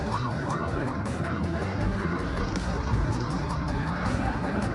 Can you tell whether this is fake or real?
fake